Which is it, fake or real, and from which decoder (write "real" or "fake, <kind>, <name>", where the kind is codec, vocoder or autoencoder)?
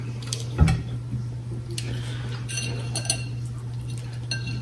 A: real